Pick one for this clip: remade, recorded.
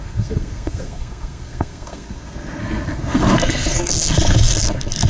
remade